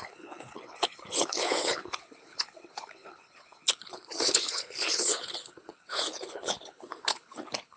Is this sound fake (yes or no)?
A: yes